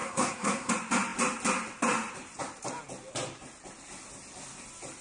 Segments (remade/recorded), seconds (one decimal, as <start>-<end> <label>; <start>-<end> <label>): 0.0-0.7 remade; 0.7-5.0 recorded